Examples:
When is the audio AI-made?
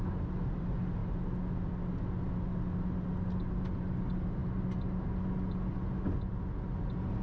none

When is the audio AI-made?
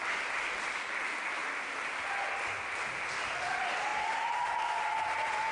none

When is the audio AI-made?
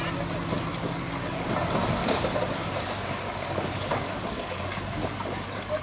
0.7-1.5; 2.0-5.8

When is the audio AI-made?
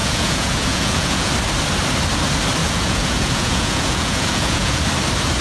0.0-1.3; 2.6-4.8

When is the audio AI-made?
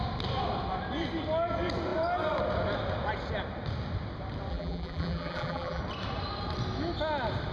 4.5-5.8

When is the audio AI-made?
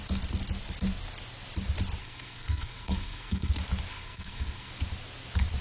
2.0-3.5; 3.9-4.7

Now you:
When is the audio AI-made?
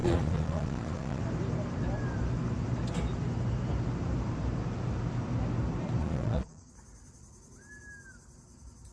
0.0-1.2; 6.0-6.7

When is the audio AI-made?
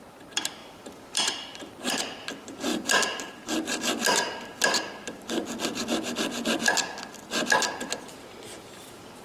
0.6-1.9; 2.7-3.3